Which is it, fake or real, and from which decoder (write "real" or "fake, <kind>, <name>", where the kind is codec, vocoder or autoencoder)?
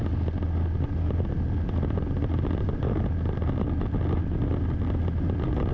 real